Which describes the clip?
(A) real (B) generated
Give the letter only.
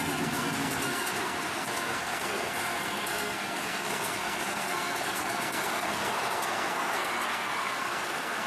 B